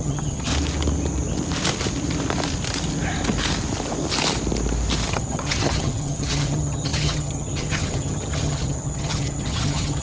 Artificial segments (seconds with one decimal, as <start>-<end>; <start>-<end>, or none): 0.0-0.5; 5.1-10.0